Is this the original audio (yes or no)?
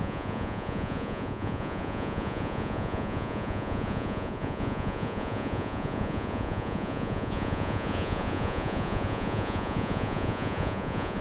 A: no